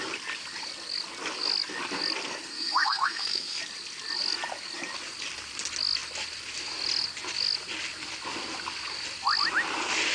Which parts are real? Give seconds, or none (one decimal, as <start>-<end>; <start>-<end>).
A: 0.0-2.5; 3.6-10.1